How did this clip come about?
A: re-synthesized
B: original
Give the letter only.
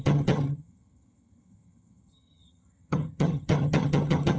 A